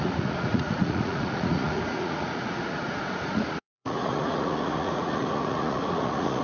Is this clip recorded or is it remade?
remade